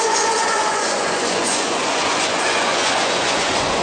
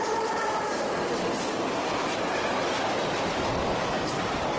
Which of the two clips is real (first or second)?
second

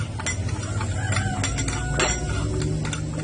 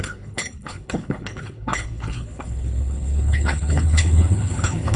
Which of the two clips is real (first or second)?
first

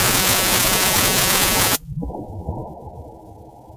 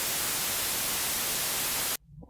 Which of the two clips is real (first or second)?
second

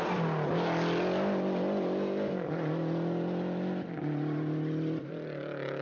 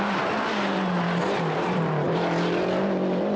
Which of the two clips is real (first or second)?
first